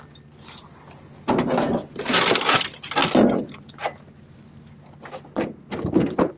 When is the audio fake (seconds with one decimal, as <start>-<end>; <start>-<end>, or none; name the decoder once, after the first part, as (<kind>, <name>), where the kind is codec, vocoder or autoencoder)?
none